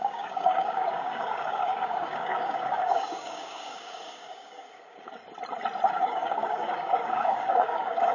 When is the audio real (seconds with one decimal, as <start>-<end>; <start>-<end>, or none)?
5.2-5.9